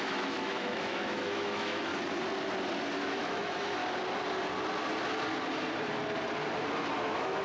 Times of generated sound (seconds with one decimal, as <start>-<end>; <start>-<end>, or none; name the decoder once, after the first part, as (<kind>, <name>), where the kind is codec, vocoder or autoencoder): 0.0-1.9 (autoencoder, DAC-VAE); 3.1-3.8; 7.0-7.4